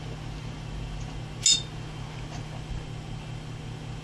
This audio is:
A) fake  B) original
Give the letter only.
B